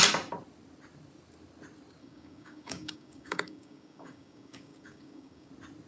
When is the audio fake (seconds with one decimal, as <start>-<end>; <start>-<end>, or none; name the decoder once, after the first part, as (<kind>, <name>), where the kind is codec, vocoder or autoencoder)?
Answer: 2.0-5.5 (codec, DAC)